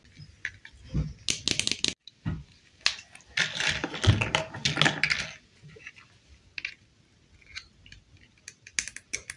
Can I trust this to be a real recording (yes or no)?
yes